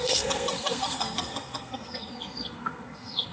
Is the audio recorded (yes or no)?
no